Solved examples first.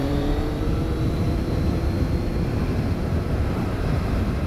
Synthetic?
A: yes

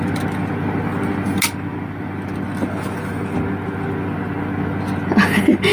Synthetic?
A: no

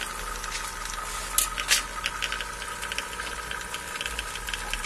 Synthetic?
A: no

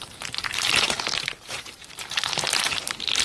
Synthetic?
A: yes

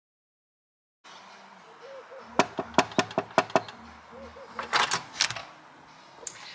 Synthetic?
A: no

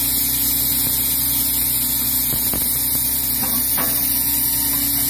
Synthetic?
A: no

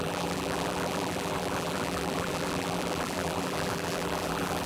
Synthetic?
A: yes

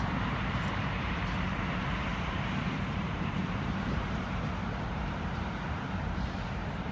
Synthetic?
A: yes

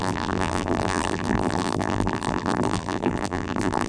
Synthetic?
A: yes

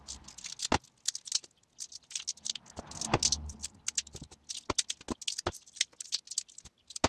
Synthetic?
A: no